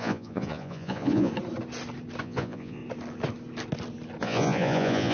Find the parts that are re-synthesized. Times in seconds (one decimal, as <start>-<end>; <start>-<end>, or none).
0.0-1.3; 2.2-2.8; 4.2-5.1